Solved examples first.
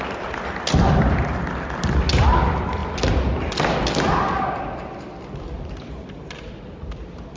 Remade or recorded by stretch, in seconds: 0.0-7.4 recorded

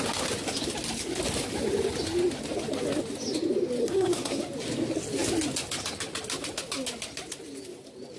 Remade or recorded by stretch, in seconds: 0.0-3.8 recorded; 3.8-4.4 remade; 4.4-8.2 recorded